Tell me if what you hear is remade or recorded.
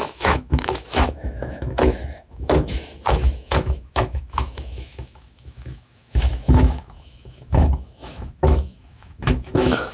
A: remade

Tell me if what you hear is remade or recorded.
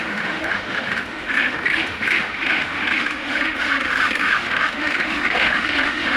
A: remade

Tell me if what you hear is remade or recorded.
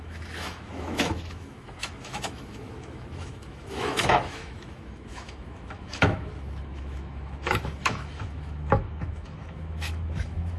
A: remade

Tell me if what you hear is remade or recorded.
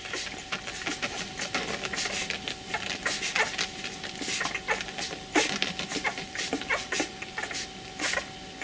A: recorded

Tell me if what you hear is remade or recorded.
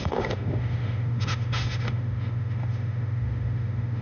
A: remade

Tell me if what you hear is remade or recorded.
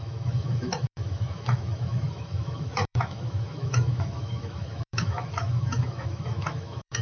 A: remade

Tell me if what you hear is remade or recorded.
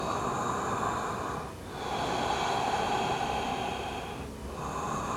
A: recorded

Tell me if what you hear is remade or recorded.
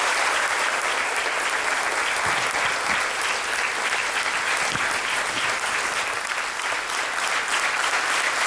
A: recorded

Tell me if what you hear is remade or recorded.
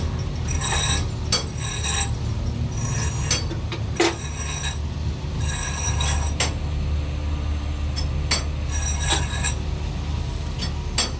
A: recorded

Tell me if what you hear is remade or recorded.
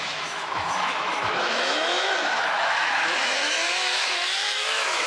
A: remade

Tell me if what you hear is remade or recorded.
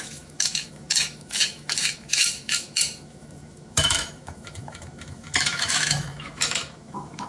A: remade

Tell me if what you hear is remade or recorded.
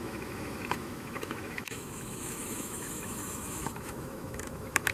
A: remade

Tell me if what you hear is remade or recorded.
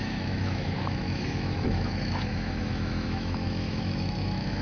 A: remade